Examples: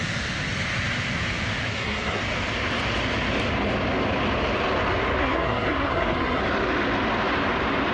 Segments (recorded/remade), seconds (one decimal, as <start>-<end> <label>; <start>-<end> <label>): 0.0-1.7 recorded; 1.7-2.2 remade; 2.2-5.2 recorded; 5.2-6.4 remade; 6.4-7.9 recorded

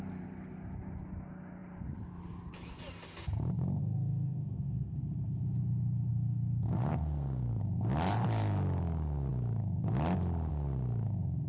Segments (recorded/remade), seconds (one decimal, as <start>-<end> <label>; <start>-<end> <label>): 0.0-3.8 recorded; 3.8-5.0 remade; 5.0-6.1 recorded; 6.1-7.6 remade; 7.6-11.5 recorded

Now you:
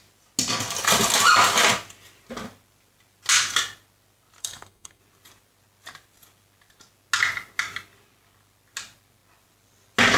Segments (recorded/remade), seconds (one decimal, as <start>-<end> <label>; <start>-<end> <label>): 0.0-4.4 recorded; 4.4-5.0 remade; 5.0-10.2 recorded

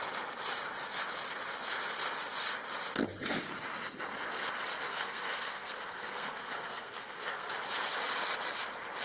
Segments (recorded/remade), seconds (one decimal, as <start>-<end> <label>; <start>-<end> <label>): 0.0-4.9 recorded; 4.9-7.5 remade; 7.5-9.0 recorded

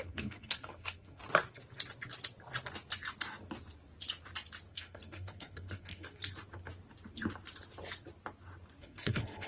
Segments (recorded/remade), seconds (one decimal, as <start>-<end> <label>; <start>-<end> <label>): 0.0-1.2 remade; 1.2-4.7 recorded; 4.7-6.2 remade; 6.2-8.8 recorded; 8.8-9.5 remade